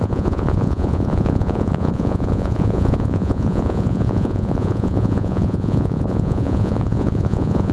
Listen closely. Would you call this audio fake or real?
fake